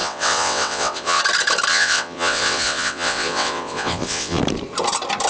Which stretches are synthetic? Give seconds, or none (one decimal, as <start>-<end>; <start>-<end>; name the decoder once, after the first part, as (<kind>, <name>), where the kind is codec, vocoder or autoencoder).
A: 0.0-1.2 (vocoder, WaveNeXt); 1.7-4.4